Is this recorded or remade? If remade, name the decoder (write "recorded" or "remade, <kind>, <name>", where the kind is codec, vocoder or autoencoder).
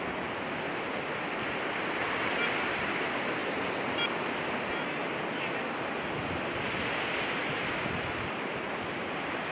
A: recorded